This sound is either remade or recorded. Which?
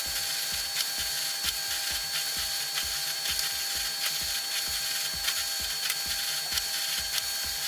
recorded